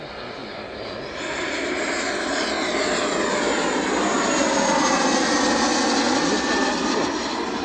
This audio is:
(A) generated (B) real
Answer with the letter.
B